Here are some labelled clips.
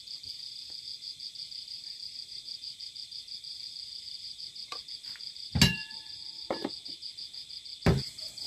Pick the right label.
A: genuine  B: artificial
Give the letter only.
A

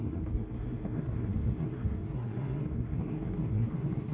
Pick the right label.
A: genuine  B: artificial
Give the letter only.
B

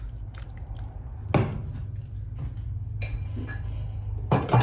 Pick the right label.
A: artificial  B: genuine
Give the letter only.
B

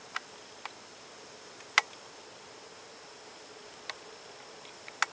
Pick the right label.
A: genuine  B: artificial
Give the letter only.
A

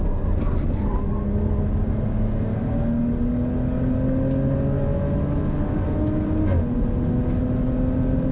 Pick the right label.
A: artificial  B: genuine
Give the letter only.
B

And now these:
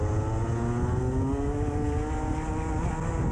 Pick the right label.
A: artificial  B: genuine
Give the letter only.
B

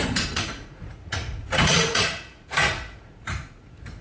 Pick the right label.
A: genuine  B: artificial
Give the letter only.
B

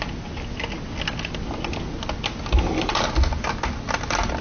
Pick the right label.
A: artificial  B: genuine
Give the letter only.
B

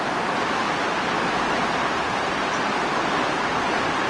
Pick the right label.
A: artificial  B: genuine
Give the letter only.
B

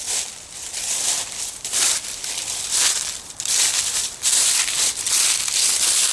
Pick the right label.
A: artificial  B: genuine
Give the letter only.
B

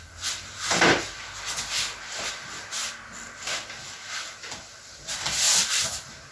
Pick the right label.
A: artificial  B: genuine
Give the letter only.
B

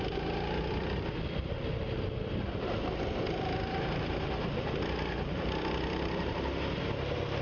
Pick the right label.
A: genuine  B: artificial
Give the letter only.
A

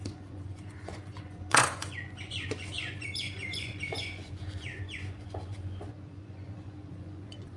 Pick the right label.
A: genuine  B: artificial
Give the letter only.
B